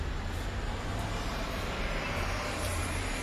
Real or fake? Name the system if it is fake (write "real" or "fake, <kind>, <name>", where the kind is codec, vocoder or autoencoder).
fake, vocoder, BigVGAN v2